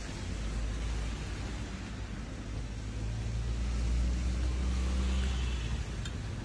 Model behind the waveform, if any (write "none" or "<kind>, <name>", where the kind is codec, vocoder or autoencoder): none